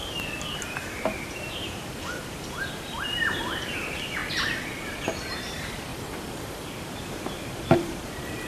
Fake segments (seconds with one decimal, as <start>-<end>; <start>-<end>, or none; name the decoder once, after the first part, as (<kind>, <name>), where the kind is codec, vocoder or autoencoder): 0.6-4.2 (vocoder, BigVGAN v2); 5.3-5.9; 6.9-8.5